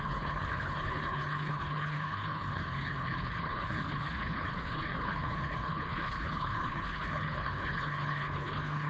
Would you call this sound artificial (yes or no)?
yes